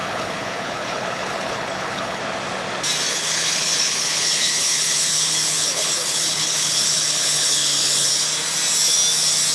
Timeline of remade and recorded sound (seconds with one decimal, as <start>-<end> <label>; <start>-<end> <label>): 0.0-2.2 remade; 2.2-3.1 recorded; 3.1-8.1 remade; 8.1-9.5 recorded